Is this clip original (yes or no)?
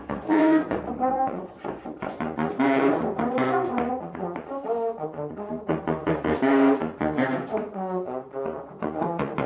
no